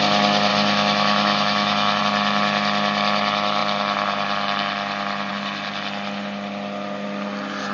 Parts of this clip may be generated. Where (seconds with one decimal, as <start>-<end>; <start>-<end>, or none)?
0.5-2.0